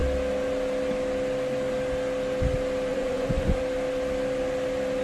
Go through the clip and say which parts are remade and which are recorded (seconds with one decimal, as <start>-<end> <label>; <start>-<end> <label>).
0.0-2.9 recorded; 2.9-3.6 remade; 3.6-5.0 recorded